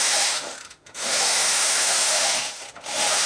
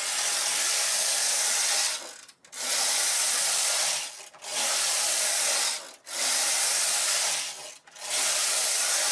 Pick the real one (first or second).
second